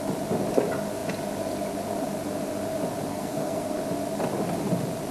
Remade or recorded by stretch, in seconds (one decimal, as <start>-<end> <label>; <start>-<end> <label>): 0.0-3.1 recorded; 3.1-3.8 remade; 3.8-5.1 recorded